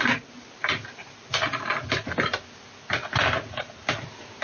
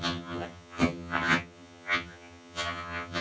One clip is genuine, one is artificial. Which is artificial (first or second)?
second